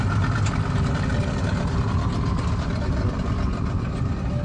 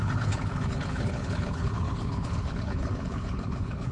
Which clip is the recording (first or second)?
first